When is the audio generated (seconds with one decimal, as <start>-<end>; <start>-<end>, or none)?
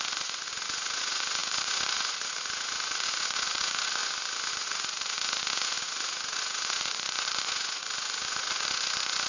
0.0-4.0; 4.5-9.3